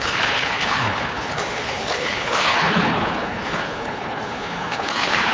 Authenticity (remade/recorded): remade